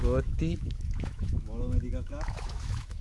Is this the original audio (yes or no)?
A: no